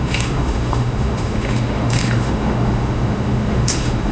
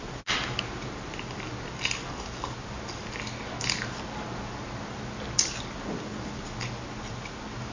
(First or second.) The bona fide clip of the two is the second